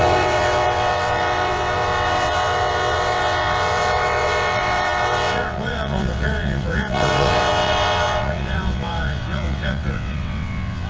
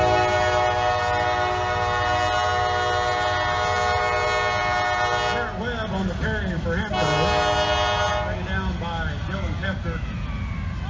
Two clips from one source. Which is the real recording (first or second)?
second